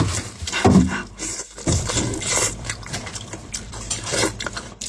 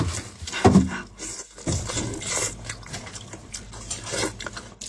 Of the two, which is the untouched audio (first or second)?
second